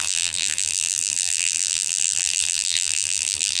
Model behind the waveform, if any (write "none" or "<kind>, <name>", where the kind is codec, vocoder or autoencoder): vocoder, BigVGAN v2